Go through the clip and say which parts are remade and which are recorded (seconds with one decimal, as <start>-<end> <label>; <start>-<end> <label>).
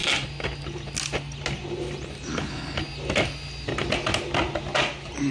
0.0-2.3 recorded; 2.3-2.8 remade; 2.8-5.3 recorded